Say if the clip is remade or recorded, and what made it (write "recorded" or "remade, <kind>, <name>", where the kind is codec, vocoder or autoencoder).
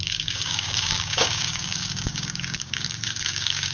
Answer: remade, codec, DAC